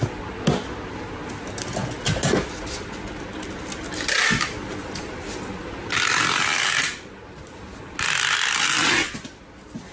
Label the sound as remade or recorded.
recorded